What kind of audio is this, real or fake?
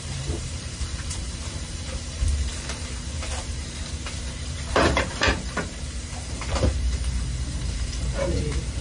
fake